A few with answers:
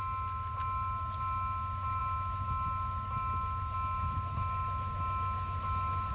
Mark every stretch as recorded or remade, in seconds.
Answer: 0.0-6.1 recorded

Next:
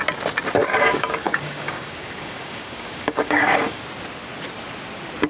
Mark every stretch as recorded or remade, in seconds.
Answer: 0.0-0.6 recorded; 0.6-3.8 remade; 3.8-5.3 recorded

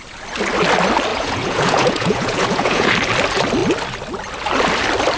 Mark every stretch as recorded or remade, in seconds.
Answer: 0.0-1.1 recorded; 1.1-2.9 remade; 2.9-5.2 recorded

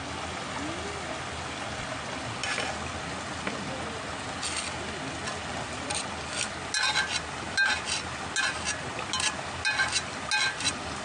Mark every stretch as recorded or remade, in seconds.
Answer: 0.0-11.0 recorded

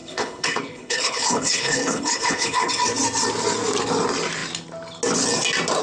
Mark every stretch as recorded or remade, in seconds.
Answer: 0.0-2.7 remade; 2.7-5.8 recorded

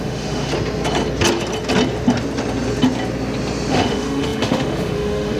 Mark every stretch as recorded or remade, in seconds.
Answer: 0.0-0.5 remade; 0.5-3.7 recorded; 3.7-5.4 remade

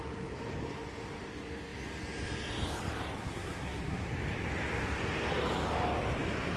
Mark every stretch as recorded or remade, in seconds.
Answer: 0.0-3.2 recorded; 3.2-4.1 remade; 4.1-6.6 recorded

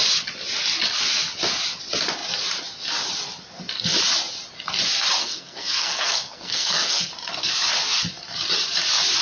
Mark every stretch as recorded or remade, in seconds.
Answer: 0.0-5.2 recorded; 5.2-7.1 remade; 7.1-9.2 recorded